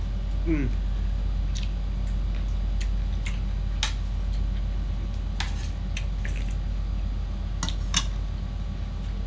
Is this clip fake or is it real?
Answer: real